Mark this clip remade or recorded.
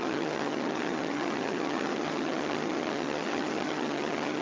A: remade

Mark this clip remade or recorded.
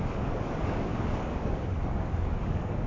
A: remade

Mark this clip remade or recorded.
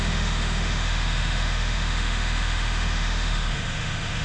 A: remade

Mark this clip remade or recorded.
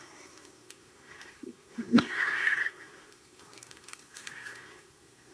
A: remade